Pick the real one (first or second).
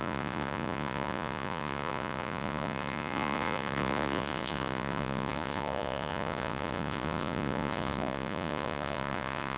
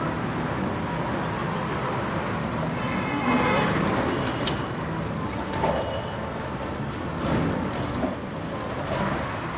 second